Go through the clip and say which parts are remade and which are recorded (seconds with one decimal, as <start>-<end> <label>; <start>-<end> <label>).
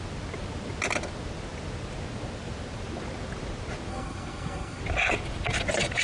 0.0-3.9 recorded; 3.9-4.8 remade; 4.8-6.0 recorded